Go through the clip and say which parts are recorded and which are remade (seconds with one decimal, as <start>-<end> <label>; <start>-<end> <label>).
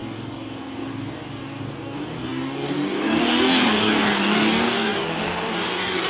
0.0-6.1 remade